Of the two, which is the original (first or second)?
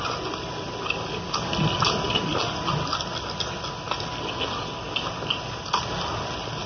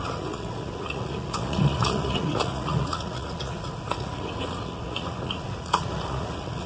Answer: first